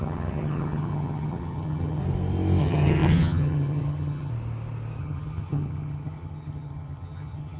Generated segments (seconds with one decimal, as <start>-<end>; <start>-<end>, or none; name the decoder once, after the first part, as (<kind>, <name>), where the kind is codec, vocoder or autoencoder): 0.0-2.0 (vocoder, HiFi-GAN); 2.6-4.3; 5.0-7.6

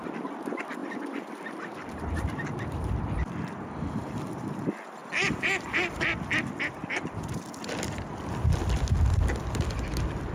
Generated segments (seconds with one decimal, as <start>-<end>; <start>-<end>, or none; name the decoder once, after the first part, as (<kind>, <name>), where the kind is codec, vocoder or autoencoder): 0.8-1.4 (vocoder, BigVGAN v2); 5.0-6.0; 6.8-8.1

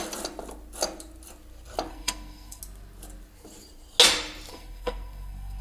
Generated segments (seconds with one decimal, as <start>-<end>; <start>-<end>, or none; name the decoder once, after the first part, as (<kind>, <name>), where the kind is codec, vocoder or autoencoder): 1.9-2.6 (codec, SNAC); 4.5-5.6

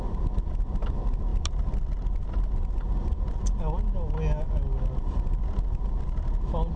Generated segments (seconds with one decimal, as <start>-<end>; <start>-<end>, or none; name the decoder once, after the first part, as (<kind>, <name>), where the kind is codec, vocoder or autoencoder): none

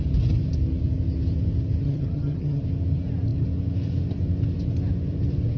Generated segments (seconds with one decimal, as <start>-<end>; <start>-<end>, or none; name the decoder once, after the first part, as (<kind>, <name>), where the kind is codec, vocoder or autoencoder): 1.8-2.6 (vocoder, HiFi-GAN)

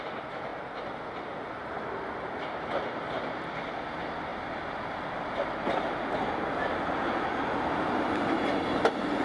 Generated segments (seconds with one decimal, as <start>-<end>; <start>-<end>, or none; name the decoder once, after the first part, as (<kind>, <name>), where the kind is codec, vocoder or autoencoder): none

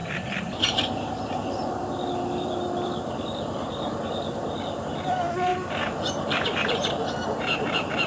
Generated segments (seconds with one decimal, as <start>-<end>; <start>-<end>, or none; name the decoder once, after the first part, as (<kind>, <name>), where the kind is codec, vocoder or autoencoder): 0.0-4.9 (vocoder, BigVGAN v2); 5.5-8.1

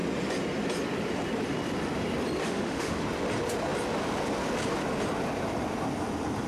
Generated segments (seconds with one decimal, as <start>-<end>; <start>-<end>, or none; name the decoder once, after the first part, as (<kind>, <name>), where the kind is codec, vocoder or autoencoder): 2.4-3.0 (autoencoder, DAC-VAE)